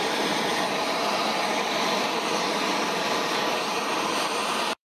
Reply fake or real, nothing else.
fake